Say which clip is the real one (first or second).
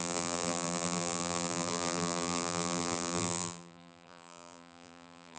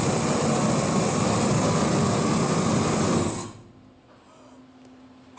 second